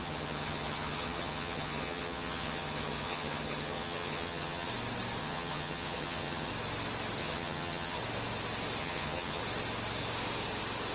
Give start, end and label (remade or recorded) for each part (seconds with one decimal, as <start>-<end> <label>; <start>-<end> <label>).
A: 0.0-4.7 remade; 4.7-5.2 recorded; 5.2-6.5 remade; 6.5-7.2 recorded; 7.2-8.0 remade; 8.0-8.8 recorded; 8.8-9.4 remade; 9.4-10.9 recorded